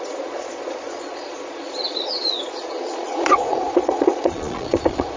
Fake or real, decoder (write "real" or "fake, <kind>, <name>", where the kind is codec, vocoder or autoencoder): fake, vocoder, Vocos